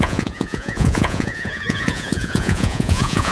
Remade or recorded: remade